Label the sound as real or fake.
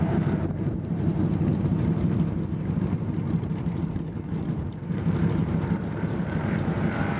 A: fake